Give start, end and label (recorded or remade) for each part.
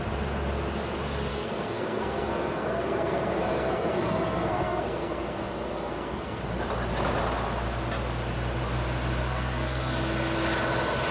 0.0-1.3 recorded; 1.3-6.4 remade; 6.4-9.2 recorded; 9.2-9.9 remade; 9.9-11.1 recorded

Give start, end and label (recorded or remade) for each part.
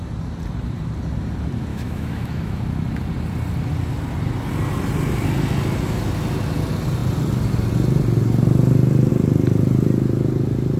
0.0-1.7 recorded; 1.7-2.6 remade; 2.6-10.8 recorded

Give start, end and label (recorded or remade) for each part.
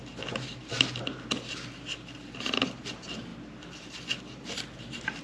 0.0-2.8 recorded; 2.8-3.3 remade; 3.3-4.2 recorded; 4.2-5.2 remade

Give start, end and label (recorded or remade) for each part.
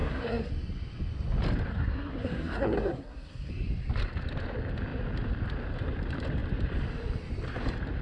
0.0-0.5 remade; 0.5-1.7 recorded; 1.7-3.5 remade; 3.5-8.0 recorded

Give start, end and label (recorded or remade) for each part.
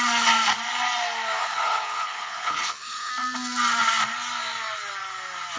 0.0-1.4 recorded; 1.4-3.1 remade; 3.1-5.6 recorded